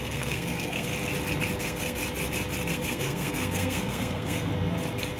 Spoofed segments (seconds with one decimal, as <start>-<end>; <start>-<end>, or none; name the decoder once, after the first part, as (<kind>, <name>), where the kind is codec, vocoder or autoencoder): 0.0-0.9 (codec, SNAC); 1.6-2.0; 2.7-4.5